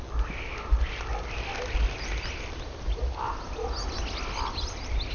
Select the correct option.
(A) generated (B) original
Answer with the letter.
B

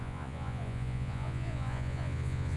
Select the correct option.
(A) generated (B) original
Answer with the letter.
A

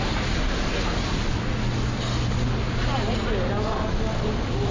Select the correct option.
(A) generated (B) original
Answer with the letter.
B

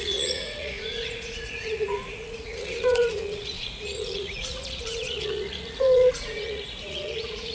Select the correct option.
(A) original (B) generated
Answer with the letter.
B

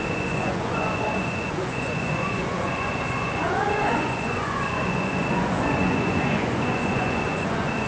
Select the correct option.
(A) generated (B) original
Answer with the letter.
A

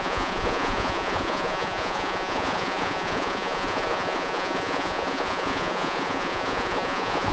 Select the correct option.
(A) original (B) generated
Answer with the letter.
B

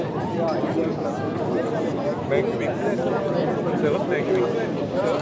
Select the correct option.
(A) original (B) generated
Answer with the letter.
A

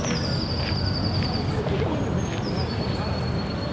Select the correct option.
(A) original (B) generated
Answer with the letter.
A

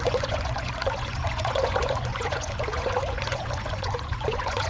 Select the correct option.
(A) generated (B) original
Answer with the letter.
A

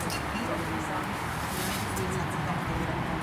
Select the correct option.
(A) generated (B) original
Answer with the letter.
B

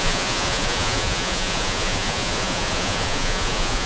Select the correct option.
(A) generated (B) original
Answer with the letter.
A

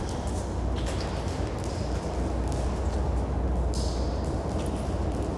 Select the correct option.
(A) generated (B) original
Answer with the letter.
B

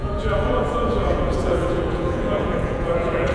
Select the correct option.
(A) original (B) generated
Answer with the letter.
B